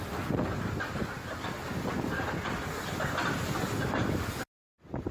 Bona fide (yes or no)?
no